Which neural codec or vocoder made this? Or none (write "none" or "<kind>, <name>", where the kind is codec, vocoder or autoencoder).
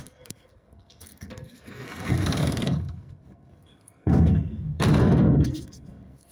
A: codec, SNAC